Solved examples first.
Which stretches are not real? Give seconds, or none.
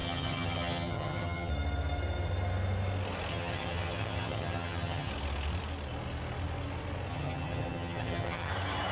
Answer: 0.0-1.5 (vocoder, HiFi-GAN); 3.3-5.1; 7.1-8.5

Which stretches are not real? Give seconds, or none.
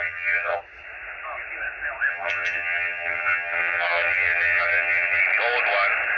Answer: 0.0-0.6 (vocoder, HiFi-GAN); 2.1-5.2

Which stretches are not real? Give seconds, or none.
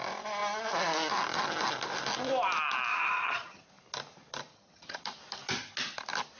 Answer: 2.9-3.6 (vocoder, HiFi-GAN); 4.5-5.0